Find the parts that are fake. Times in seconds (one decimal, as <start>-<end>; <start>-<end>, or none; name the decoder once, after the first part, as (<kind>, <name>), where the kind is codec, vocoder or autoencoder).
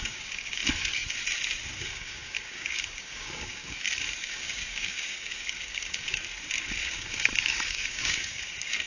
0.0-0.6 (codec, DAC); 1.7-3.6; 4.2-6.2; 6.8-8.9